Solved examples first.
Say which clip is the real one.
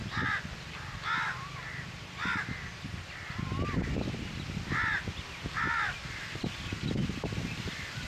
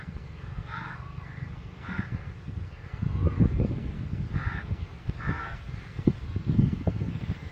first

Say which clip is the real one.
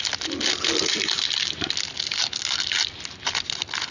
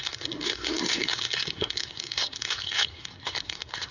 first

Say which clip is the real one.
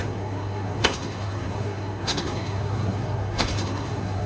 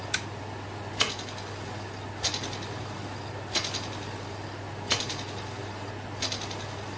second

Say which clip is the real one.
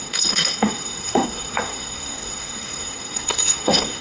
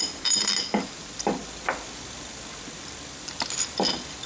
second